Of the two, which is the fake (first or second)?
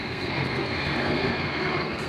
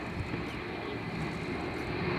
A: first